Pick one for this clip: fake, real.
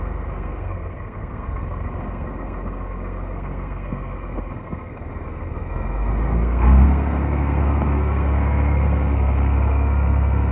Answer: fake